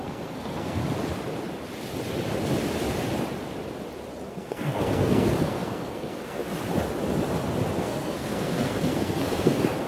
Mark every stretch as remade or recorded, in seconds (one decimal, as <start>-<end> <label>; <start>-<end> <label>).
0.0-0.8 remade; 0.8-4.3 recorded; 4.3-6.4 remade; 6.4-7.8 recorded; 7.8-9.9 remade